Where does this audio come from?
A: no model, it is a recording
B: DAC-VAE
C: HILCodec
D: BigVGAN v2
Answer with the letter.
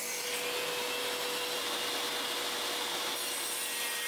A